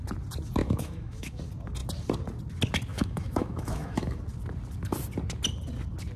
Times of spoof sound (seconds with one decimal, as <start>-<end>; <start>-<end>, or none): 0.6-1.4; 2.9-4.2